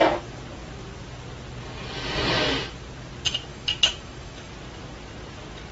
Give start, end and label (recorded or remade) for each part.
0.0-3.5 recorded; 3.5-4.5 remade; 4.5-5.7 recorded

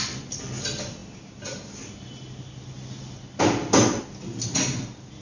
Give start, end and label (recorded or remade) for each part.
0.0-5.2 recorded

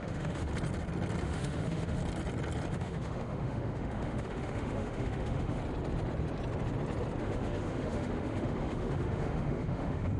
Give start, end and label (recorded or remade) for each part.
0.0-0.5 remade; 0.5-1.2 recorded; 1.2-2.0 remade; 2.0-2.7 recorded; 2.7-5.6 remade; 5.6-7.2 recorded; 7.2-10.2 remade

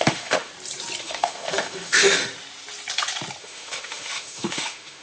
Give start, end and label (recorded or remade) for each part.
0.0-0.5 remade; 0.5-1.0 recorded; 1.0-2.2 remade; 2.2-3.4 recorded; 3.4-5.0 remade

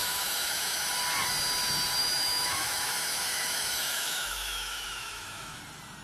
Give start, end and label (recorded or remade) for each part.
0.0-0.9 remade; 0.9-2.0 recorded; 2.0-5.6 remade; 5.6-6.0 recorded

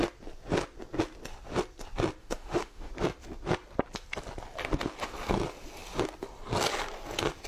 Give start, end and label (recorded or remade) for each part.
0.0-2.2 recorded; 2.2-2.9 remade; 2.9-7.5 recorded